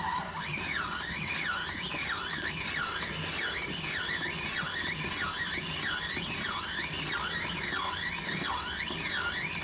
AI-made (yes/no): no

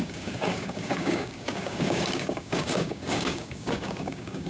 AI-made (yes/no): yes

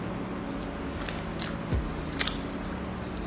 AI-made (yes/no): no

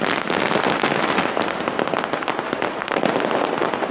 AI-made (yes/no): no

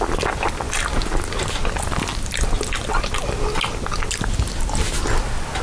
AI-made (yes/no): no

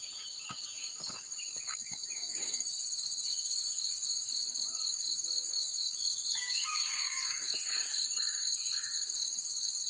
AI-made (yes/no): yes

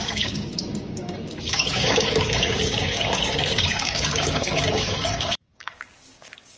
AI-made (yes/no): yes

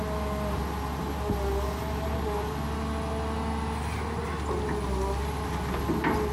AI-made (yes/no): no